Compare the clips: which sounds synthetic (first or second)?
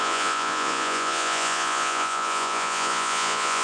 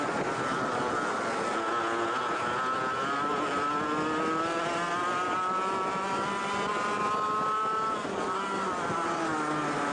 first